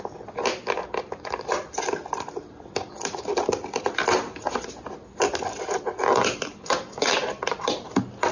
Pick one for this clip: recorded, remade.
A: recorded